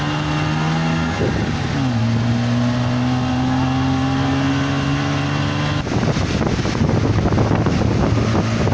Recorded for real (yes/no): yes